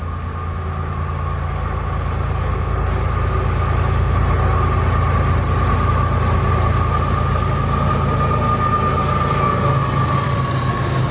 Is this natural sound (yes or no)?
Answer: yes